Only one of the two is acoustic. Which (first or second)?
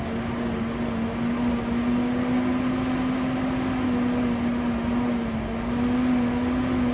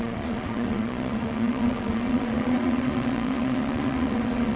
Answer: first